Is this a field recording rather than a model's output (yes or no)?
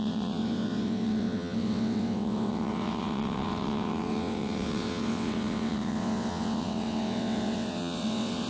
no